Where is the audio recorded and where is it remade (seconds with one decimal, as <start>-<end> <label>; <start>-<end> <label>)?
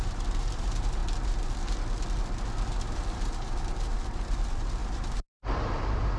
0.0-1.0 remade; 1.0-2.7 recorded; 2.7-6.2 remade